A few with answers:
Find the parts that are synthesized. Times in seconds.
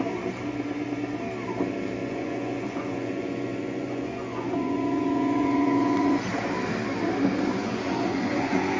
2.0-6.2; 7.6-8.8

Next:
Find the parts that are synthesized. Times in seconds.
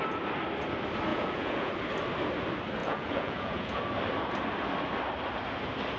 1.1-1.7; 2.8-3.8